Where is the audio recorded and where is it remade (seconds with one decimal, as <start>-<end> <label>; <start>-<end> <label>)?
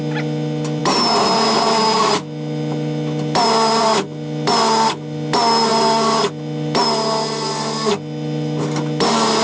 0.0-9.4 recorded